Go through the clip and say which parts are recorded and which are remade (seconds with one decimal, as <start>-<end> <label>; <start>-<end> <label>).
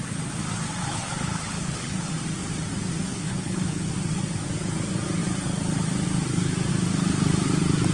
0.0-0.8 recorded; 0.8-2.1 remade; 2.1-3.1 recorded; 3.1-3.9 remade; 3.9-7.9 recorded